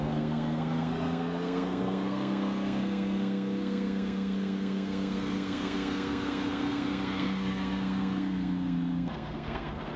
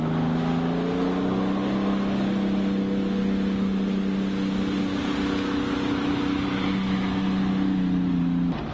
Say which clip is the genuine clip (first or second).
second